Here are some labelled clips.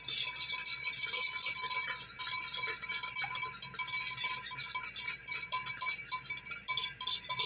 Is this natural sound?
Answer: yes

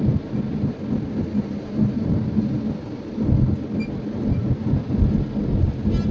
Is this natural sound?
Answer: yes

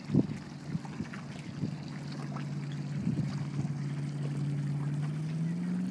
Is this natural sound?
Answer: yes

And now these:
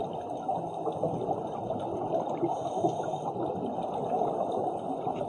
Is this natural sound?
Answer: yes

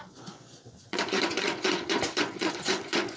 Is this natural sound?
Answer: no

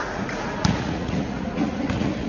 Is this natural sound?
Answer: no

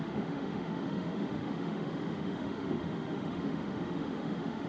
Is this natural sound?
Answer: no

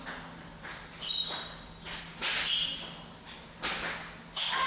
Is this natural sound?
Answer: yes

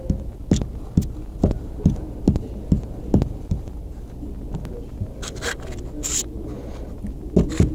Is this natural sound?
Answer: yes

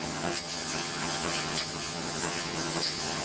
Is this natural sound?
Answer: no